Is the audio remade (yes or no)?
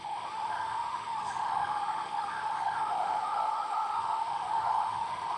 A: yes